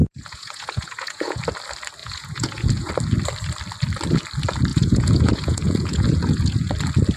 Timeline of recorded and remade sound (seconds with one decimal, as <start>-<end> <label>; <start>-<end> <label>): 0.0-1.4 remade; 1.4-2.0 recorded; 2.0-2.9 remade; 2.9-4.7 recorded; 4.7-6.7 remade; 6.7-7.2 recorded